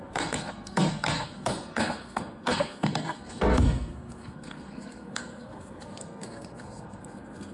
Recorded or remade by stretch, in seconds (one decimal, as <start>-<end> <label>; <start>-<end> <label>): 0.0-7.5 remade